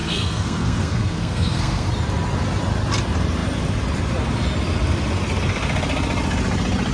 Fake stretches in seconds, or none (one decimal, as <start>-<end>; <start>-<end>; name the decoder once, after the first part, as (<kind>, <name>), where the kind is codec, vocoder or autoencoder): 0.0-1.9 (codec, SNAC)